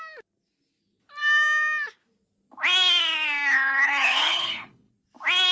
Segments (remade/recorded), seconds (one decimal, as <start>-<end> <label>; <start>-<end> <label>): 0.0-3.5 recorded; 3.5-4.9 remade; 4.9-5.5 recorded